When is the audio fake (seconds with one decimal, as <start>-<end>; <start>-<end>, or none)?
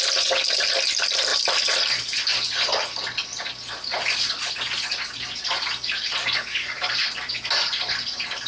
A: 6.2-6.9